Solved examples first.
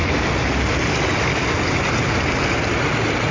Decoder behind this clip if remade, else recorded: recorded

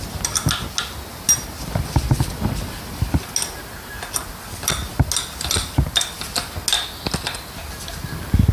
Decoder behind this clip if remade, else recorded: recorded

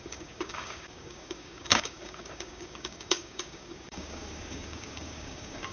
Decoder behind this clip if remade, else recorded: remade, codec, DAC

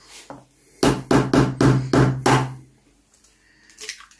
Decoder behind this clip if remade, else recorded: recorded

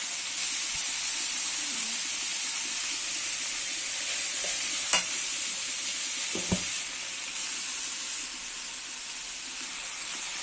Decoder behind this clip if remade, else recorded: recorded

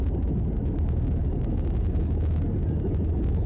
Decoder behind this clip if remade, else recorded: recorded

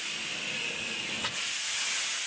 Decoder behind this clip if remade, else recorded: recorded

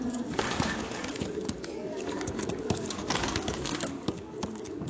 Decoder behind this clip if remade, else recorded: remade, codec, DAC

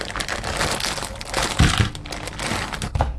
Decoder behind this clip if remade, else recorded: recorded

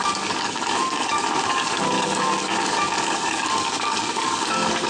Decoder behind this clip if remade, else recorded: remade, codec, DAC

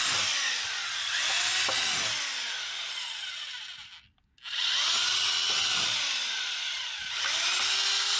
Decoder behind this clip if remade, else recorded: recorded